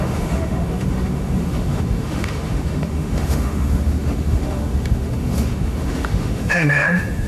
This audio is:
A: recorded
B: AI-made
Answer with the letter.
B